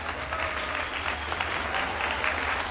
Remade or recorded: recorded